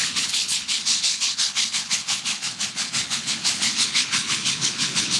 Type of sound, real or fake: fake